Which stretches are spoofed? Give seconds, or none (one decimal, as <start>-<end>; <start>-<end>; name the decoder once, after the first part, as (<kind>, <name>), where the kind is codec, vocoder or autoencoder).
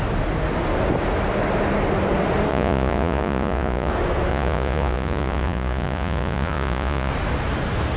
2.5-3.9 (vocoder, Vocos); 4.3-7.1